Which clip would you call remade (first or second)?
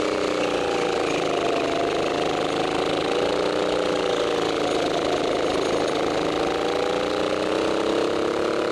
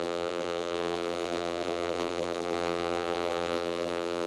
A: second